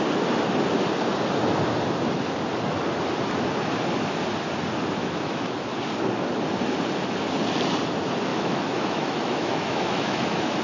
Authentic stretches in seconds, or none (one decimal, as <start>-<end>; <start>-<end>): 0.0-5.0; 5.5-8.3